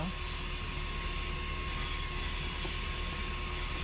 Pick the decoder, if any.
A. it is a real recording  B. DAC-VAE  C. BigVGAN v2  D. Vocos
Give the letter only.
A